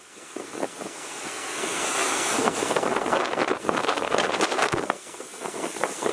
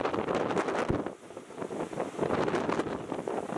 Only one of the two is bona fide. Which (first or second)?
second